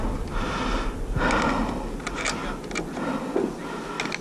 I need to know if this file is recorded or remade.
recorded